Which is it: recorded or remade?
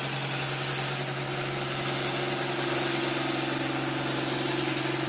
recorded